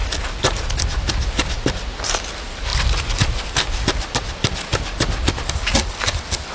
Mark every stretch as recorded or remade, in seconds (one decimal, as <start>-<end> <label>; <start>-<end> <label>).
0.0-6.5 recorded

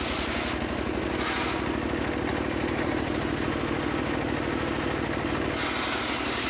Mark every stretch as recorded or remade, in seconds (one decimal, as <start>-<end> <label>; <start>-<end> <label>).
0.0-2.3 recorded; 2.3-3.2 remade; 3.2-6.5 recorded

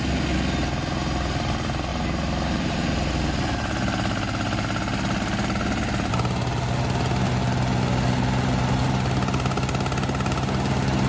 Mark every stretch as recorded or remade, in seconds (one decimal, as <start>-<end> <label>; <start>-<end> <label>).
0.0-1.9 recorded; 1.9-3.1 remade; 3.1-11.1 recorded

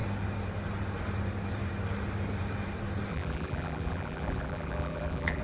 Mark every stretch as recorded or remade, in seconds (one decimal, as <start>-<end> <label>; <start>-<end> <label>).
0.0-3.1 recorded; 3.1-5.4 remade